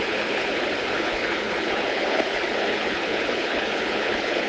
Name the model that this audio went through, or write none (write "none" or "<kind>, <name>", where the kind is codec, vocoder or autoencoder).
codec, HILCodec